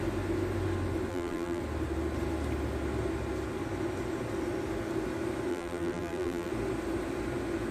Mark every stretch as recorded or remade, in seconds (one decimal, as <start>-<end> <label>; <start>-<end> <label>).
0.0-1.1 recorded; 1.1-1.6 remade; 1.6-5.5 recorded; 5.5-6.5 remade; 6.5-7.7 recorded